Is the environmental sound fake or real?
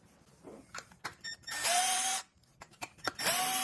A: fake